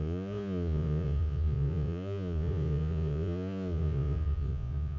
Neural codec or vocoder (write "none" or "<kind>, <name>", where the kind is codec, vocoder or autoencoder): vocoder, Vocos